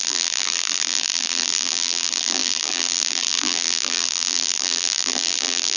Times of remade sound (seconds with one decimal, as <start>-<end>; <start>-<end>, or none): 0.0-5.8